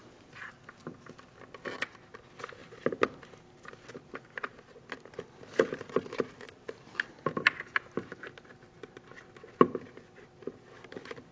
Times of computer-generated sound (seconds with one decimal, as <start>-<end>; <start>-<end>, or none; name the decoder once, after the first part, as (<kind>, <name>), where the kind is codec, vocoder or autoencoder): none